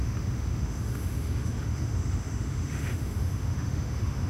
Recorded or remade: remade